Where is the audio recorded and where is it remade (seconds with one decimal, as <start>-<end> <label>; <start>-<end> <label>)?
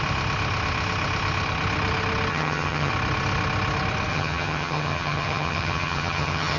0.0-2.3 recorded; 2.3-2.9 remade; 2.9-4.1 recorded; 4.1-6.6 remade